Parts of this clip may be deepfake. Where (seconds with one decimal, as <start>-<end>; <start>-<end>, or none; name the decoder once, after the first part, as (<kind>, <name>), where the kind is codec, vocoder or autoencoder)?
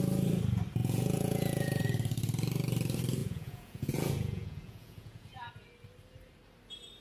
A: 0.8-1.8 (vocoder, Vocos); 3.2-5.5